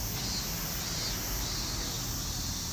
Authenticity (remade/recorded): recorded